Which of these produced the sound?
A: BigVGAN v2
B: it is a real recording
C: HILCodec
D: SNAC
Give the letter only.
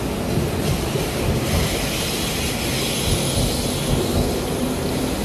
B